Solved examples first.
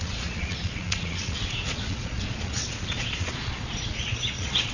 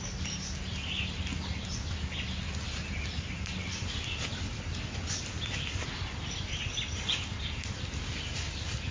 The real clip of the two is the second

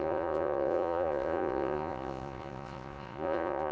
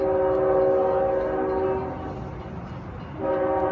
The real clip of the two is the second